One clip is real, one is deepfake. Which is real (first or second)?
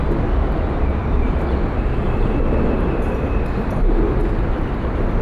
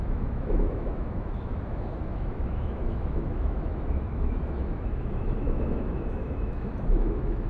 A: first